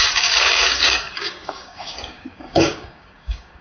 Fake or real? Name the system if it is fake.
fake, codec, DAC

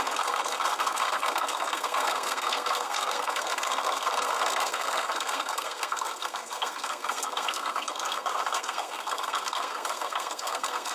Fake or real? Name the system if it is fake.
fake, codec, SNAC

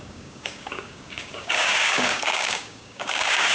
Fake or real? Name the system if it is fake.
fake, codec, DAC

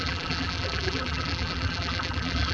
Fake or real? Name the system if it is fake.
fake, vocoder, BigVGAN v2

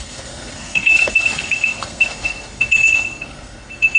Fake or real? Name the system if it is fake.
fake, codec, SNAC